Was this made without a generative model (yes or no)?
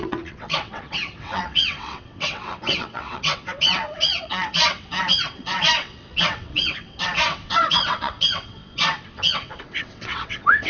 no